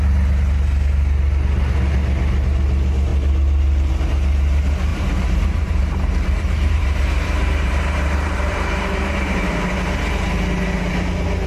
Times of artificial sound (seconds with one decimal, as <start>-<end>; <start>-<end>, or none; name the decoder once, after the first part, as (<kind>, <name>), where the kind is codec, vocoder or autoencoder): 4.9-9.9 (vocoder, BigVGAN v2)